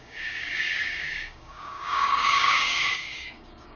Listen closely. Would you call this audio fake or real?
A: fake